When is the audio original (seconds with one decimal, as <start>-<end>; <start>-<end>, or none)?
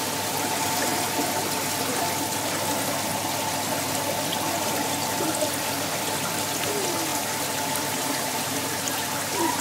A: 0.0-7.1